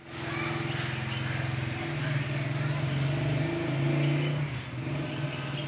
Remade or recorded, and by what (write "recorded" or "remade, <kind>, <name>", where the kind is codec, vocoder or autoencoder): recorded